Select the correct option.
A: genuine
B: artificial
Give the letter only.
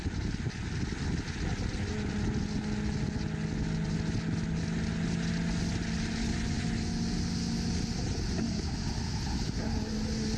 A